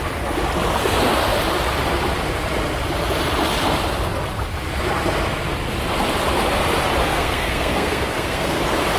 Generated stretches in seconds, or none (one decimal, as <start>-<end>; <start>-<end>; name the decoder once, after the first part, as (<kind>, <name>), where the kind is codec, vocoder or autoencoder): 7.1-8.6 (codec, SNAC)